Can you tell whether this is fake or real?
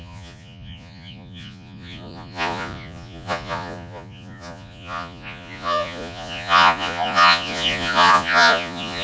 fake